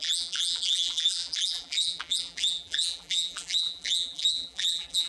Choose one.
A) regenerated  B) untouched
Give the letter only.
A